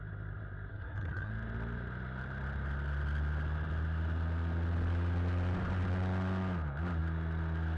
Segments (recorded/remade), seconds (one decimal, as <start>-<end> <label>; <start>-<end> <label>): 0.0-0.7 recorded; 0.7-1.3 remade; 1.3-7.8 recorded